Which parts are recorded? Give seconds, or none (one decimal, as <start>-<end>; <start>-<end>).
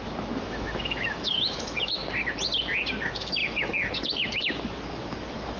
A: 2.0-3.0